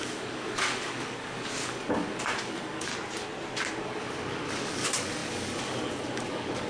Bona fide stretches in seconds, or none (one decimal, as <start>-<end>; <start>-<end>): 2.9-3.7